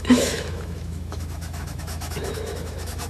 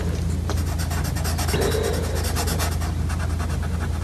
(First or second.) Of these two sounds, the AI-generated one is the first